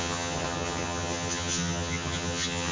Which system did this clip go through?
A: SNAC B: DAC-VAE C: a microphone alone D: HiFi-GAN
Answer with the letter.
D